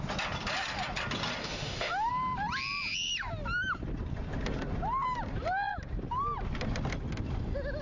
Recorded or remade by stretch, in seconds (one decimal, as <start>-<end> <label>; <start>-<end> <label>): 0.0-1.4 recorded; 1.4-2.1 remade; 2.1-7.8 recorded